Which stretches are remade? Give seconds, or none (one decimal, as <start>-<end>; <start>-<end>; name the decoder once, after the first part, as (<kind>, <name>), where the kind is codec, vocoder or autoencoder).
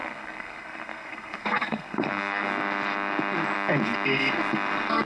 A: 0.0-2.5 (codec, SNAC)